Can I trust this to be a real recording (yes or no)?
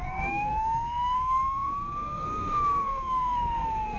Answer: no